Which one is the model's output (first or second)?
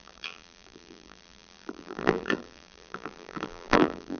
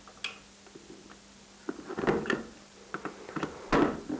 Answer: first